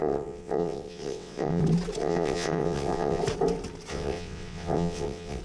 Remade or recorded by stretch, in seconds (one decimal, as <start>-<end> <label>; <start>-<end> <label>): 0.0-1.6 remade; 1.6-2.0 recorded; 2.0-3.2 remade; 3.2-3.9 recorded; 3.9-5.4 remade